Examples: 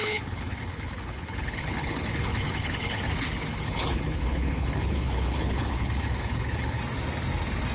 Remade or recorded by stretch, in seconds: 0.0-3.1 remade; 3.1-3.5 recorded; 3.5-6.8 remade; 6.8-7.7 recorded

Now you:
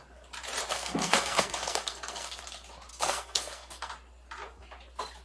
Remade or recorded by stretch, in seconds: 0.0-0.7 recorded; 0.7-2.4 remade; 2.4-2.9 recorded; 2.9-3.9 remade; 3.9-5.2 recorded

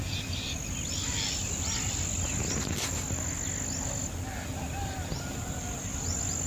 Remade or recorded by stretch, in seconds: 0.0-6.5 recorded